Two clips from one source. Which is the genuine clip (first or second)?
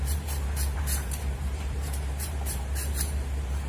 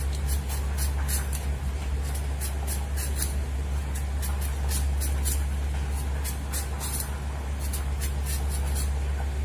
second